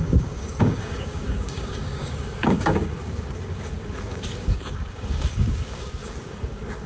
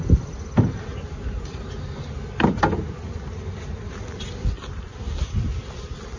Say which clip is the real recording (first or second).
second